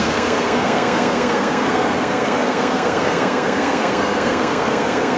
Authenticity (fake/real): fake